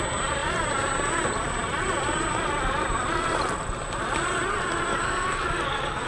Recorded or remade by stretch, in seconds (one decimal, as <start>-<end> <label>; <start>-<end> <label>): 0.0-4.9 recorded; 4.9-6.1 remade

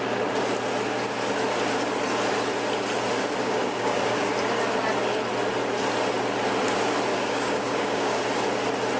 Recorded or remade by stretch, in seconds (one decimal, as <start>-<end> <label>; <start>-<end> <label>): 0.0-3.4 recorded; 3.4-4.3 remade; 4.3-7.1 recorded; 7.1-8.2 remade; 8.2-9.0 recorded